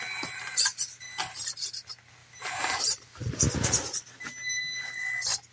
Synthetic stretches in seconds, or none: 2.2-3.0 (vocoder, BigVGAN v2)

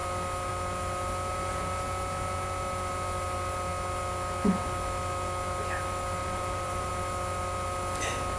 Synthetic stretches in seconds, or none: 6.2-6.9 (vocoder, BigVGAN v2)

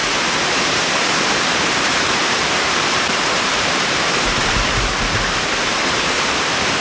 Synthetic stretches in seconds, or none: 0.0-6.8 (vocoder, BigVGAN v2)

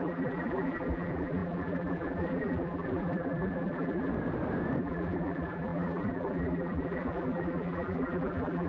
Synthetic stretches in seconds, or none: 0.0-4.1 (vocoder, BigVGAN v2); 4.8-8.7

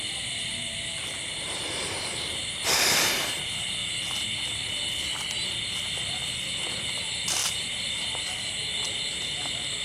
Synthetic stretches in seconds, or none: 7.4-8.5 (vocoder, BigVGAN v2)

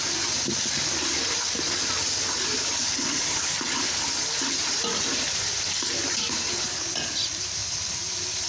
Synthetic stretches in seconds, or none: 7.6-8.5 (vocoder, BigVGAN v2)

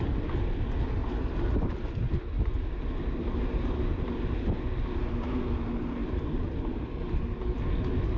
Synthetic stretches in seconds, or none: 1.0-5.1 (vocoder, BigVGAN v2); 6.0-7.7